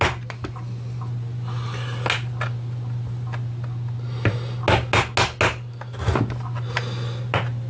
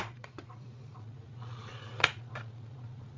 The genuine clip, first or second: first